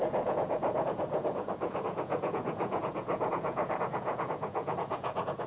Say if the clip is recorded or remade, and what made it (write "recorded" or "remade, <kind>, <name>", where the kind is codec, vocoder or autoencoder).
remade, vocoder, Vocos